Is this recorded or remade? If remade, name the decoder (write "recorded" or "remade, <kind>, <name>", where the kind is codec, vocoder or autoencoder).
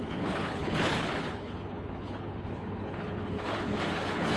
remade, codec, HILCodec